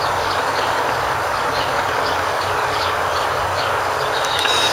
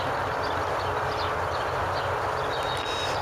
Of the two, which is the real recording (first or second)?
second